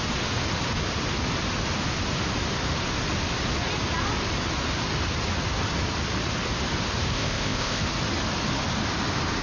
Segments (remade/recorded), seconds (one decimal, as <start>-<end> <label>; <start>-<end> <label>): 0.0-7.1 recorded; 7.1-7.8 remade; 7.8-9.4 recorded